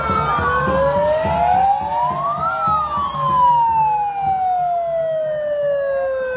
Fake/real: real